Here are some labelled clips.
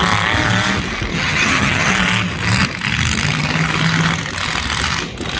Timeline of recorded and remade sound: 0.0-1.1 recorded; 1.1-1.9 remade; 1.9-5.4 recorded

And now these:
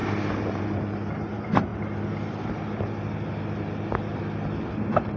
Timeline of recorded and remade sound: 0.0-0.6 remade; 0.6-5.2 recorded

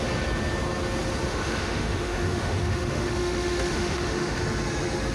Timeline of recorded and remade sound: 0.0-1.3 recorded; 1.3-4.4 remade; 4.4-5.1 recorded